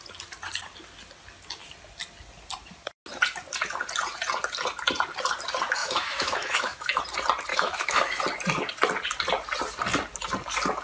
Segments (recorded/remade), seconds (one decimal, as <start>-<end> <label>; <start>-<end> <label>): 0.0-5.8 recorded; 5.8-7.0 remade; 7.0-7.5 recorded; 7.5-8.2 remade; 8.2-10.8 recorded